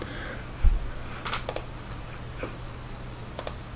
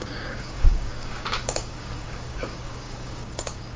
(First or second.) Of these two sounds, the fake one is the second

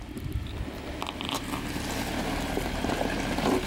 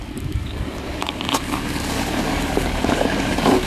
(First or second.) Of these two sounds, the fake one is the second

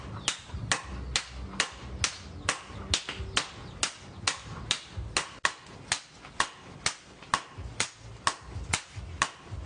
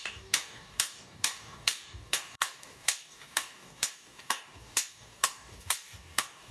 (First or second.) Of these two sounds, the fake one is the second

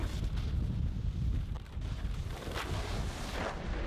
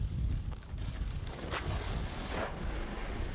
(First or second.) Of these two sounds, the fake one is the second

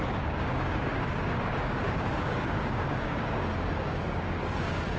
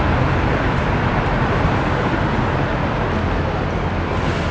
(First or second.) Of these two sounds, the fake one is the first